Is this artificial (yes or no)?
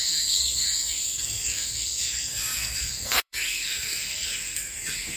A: yes